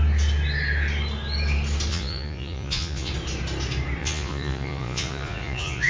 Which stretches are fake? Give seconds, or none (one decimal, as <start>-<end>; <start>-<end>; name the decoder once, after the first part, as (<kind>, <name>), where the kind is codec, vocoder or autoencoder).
1.9-3.1 (vocoder, Vocos); 4.0-5.9